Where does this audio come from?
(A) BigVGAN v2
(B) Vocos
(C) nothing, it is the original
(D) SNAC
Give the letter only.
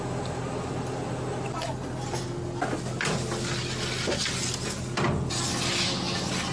C